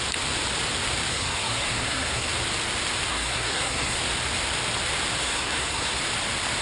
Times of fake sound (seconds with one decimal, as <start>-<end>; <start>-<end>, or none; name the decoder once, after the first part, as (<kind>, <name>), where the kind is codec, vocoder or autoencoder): 1.1-2.3 (codec, SNAC); 3.1-4.0; 5.2-6.0